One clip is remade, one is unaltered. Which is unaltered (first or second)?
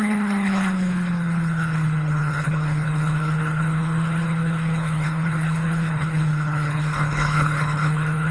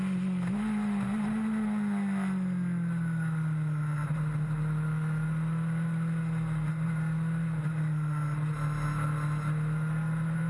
second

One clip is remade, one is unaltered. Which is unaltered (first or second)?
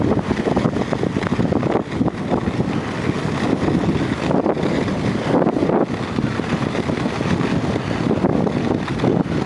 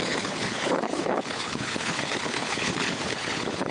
first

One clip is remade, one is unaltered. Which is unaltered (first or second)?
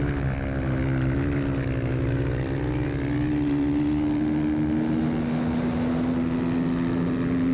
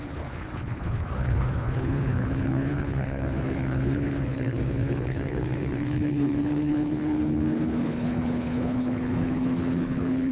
first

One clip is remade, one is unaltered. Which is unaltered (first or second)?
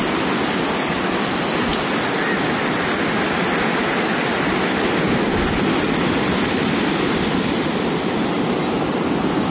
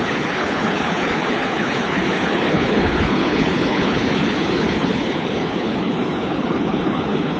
first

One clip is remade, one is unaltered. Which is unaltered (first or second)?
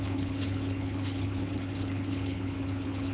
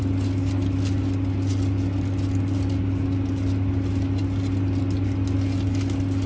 second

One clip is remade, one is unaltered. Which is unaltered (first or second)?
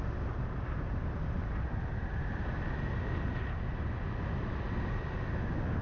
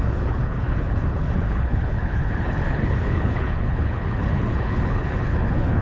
first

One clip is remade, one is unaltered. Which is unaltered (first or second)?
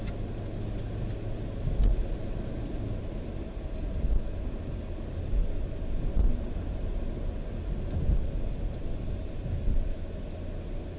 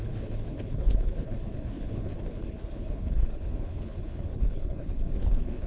first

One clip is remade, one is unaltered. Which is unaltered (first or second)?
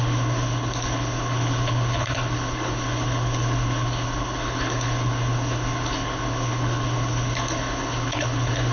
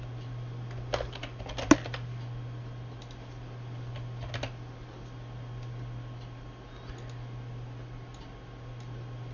second